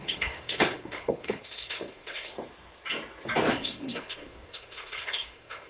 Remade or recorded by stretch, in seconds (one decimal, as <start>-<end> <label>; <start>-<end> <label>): 0.0-2.3 remade; 2.3-3.5 recorded; 3.5-5.7 remade